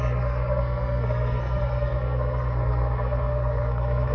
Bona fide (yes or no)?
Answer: no